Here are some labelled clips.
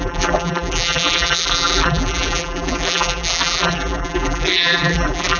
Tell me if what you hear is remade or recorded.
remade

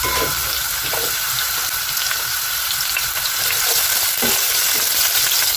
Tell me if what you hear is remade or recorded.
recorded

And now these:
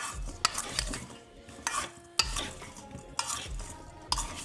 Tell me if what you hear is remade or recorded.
recorded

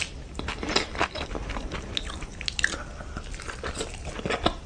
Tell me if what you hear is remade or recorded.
recorded